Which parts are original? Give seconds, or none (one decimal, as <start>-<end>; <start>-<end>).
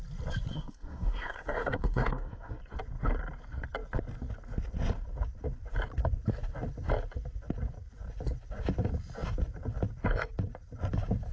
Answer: 0.0-0.5; 2.6-11.3